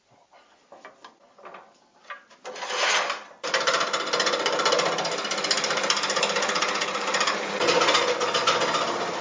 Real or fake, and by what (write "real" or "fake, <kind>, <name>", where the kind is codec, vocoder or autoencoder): real